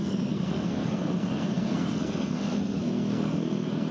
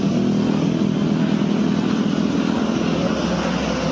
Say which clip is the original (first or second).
second